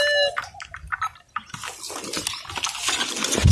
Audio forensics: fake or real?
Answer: real